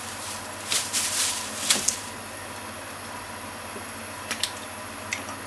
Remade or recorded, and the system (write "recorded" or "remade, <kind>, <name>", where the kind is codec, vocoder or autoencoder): recorded